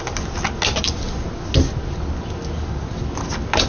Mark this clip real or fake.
real